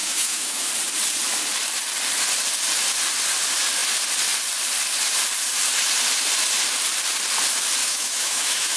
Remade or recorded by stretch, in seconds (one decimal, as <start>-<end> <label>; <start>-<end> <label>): 0.0-0.7 remade; 0.7-7.8 recorded; 7.8-8.8 remade